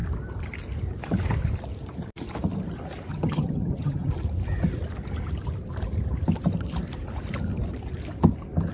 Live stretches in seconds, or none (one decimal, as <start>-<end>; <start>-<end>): 0.0-3.1; 4.1-8.7